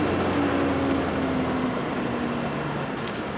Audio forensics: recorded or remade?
recorded